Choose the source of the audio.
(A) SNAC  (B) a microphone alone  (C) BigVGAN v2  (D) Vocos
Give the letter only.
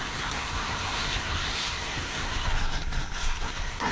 A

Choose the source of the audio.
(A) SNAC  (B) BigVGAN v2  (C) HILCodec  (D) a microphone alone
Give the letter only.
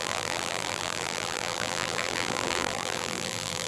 B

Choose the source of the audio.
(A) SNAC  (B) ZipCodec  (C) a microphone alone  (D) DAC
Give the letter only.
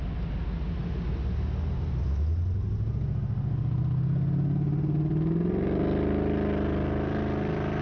C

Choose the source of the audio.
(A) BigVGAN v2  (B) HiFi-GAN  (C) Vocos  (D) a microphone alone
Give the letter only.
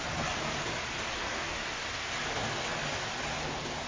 D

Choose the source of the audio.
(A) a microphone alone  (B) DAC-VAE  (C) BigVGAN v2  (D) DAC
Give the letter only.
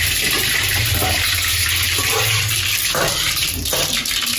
C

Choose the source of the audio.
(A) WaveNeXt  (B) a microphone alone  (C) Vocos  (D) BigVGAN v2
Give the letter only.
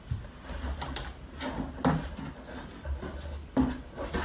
B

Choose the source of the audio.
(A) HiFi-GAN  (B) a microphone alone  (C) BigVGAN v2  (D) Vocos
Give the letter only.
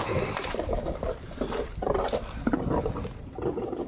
B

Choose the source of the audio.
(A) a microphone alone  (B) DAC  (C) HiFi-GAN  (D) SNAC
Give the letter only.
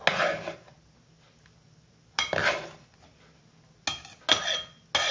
A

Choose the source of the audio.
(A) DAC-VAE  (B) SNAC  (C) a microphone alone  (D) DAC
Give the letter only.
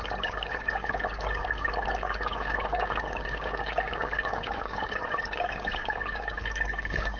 D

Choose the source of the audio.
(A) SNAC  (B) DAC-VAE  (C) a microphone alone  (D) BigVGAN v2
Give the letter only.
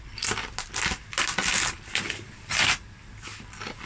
C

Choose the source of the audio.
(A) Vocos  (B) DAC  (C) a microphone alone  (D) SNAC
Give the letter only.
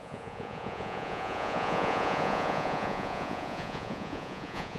A